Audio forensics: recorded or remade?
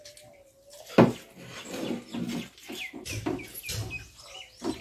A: recorded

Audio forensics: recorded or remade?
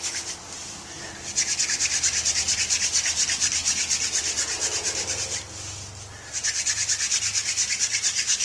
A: recorded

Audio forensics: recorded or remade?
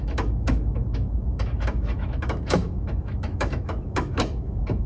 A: remade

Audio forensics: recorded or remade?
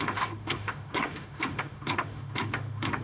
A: remade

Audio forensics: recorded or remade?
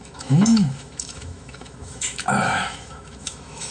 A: remade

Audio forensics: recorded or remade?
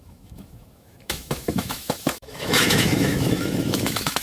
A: remade